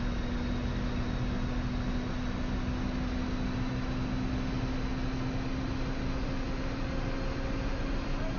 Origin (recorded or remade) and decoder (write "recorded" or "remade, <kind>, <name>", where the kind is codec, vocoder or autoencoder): recorded